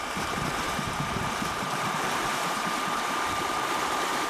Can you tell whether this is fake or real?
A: fake